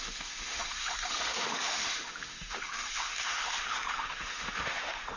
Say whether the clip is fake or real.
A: fake